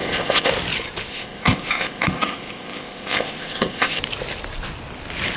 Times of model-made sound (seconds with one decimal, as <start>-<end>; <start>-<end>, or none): 0.0-0.5; 1.1-4.0